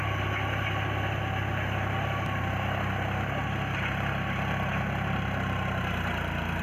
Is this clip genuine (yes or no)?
yes